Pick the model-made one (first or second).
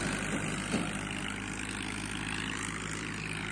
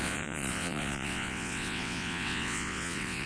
second